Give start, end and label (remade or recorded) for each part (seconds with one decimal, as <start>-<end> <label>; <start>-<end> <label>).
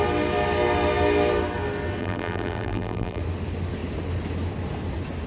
0.0-2.0 recorded; 2.0-3.2 remade; 3.2-5.3 recorded